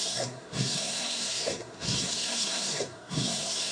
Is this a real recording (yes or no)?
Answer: no